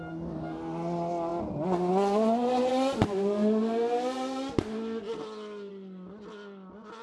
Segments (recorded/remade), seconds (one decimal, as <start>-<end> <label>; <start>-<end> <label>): 0.0-7.0 recorded